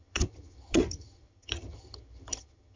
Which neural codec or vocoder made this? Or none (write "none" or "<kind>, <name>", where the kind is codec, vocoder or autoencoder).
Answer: vocoder, HiFi-GAN